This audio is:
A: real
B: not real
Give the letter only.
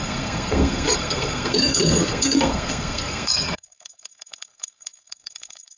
B